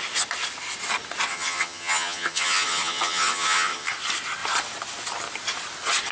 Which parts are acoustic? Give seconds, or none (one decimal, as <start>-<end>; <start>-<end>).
0.0-1.3; 3.9-6.1